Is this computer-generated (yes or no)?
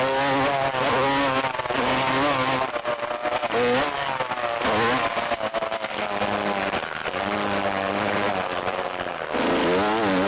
no